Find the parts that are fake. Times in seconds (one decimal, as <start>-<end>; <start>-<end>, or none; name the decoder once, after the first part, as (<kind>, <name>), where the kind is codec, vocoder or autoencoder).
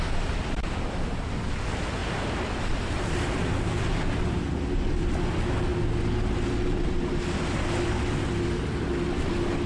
none